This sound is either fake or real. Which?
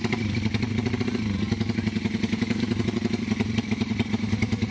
real